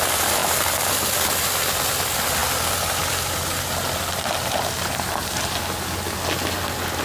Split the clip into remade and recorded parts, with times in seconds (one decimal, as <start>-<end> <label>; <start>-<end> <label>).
0.0-7.0 recorded